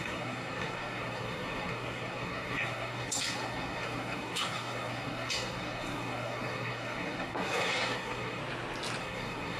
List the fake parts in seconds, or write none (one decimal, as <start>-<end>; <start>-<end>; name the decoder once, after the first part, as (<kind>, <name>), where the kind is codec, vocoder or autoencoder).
0.0-8.4 (codec, SNAC); 9.0-9.6